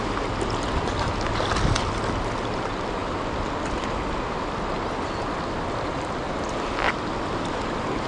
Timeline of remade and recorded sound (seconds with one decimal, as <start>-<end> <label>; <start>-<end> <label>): 0.0-8.1 recorded